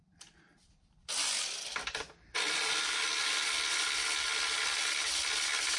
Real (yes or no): yes